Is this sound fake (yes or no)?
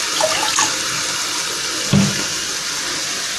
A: no